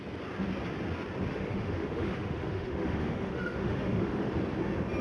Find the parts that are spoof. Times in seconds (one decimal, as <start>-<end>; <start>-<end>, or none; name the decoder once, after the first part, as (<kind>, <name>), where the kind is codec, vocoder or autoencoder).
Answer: 1.3-4.3 (autoencoder, DAC-VAE)

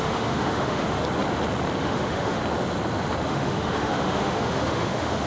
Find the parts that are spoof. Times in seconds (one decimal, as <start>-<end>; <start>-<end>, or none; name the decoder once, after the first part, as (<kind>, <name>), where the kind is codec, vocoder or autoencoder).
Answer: 0.0-1.0 (autoencoder, DAC-VAE); 1.8-2.4; 3.3-5.3

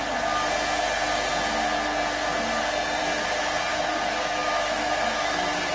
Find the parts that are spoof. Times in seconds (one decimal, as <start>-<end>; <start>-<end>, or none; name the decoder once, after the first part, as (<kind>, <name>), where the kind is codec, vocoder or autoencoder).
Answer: 3.7-5.7 (autoencoder, DAC-VAE)

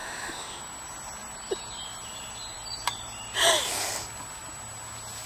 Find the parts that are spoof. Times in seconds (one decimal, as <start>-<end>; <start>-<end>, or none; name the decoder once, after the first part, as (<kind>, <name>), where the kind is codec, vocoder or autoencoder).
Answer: 0.0-0.6 (autoencoder, DAC-VAE)

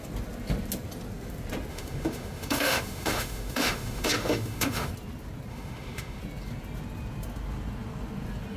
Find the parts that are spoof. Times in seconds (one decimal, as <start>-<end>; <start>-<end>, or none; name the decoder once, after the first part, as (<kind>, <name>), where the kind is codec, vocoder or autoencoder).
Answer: 1.7-4.9 (autoencoder, DAC-VAE); 5.5-6.2

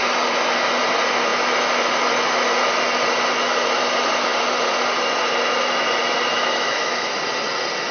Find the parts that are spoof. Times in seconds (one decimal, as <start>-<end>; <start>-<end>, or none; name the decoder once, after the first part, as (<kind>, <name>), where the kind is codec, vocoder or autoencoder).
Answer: 6.3-7.1 (autoencoder, DAC-VAE)

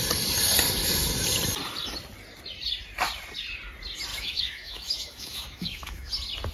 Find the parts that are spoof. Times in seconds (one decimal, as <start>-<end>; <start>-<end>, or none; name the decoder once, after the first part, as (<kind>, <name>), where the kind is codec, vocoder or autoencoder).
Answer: 4.1-6.1 (autoencoder, DAC-VAE)

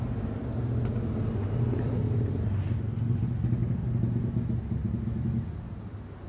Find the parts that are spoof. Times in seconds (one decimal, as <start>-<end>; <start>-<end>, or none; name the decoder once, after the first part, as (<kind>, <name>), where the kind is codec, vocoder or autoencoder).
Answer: none